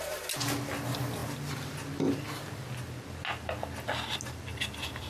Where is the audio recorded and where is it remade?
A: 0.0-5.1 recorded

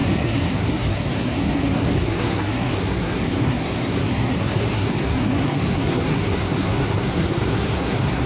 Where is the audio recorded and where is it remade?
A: 0.0-8.3 remade

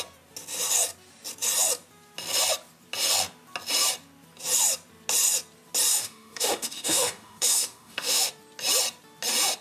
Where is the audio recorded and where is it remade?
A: 0.0-5.9 recorded; 5.9-8.3 remade; 8.3-9.6 recorded